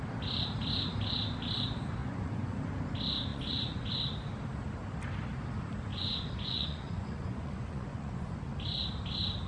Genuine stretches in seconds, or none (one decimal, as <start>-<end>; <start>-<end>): 0.0-2.0; 2.6-3.3; 3.9-5.9; 8.4-9.5